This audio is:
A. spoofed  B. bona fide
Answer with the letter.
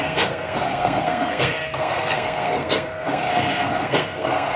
A